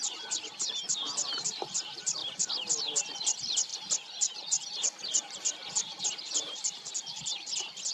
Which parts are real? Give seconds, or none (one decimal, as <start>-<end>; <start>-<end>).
0.0-7.9